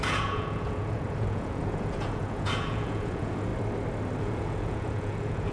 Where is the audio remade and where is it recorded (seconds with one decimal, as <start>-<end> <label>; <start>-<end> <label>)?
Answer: 0.0-3.5 remade; 3.5-4.2 recorded; 4.2-5.5 remade

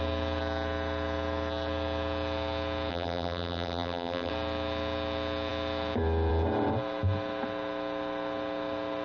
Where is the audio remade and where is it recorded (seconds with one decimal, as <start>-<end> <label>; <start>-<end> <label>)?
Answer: 0.0-2.9 recorded; 2.9-4.3 remade; 4.3-9.0 recorded

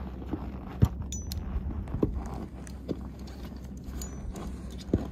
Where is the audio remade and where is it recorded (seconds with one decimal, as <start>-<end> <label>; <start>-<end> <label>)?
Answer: 0.0-5.1 recorded

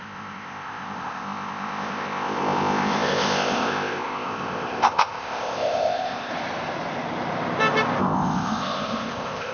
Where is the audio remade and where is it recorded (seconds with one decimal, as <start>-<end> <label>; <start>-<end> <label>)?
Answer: 0.0-6.3 remade; 6.3-8.0 recorded; 8.0-9.5 remade

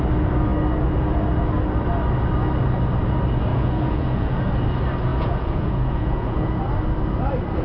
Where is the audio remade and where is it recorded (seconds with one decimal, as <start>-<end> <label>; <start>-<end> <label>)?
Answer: 0.0-3.5 recorded; 3.5-4.5 remade; 4.5-5.1 recorded; 5.1-6.6 remade; 6.6-7.6 recorded